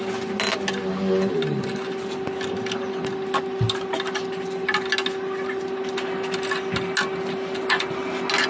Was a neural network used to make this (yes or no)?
no